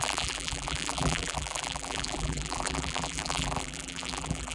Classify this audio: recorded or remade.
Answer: remade